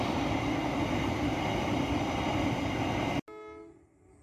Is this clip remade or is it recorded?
recorded